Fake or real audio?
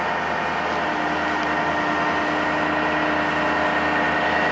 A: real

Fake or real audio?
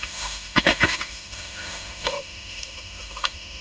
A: fake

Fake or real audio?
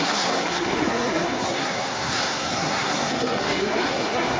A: fake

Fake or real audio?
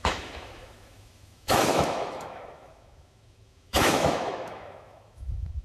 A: fake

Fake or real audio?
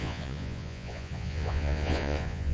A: fake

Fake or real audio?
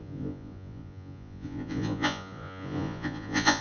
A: fake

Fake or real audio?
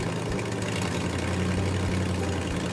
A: real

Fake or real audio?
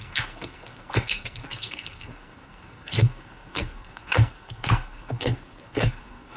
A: fake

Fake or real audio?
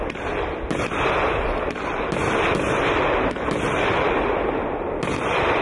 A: real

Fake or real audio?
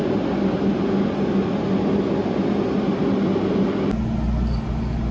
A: real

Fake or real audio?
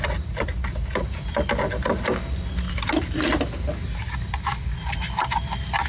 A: real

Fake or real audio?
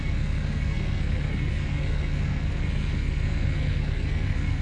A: fake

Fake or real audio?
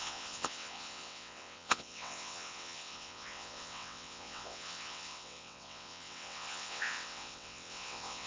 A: fake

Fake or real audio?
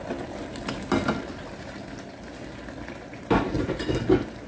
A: real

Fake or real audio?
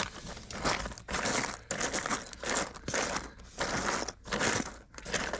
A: real